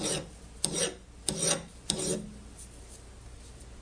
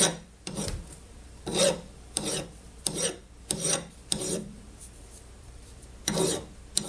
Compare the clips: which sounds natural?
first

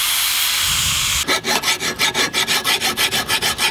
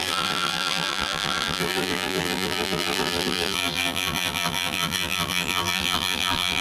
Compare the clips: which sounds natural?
first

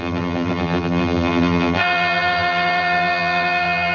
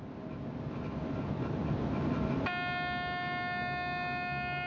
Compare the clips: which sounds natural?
second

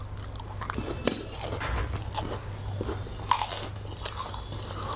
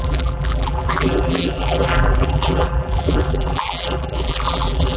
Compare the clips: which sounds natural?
first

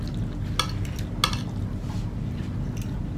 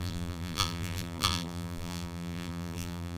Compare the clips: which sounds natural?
first